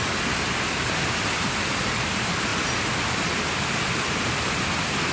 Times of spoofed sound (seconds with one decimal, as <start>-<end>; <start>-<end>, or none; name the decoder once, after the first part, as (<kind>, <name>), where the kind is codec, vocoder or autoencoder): none